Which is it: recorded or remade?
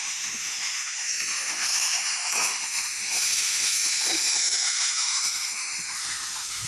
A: remade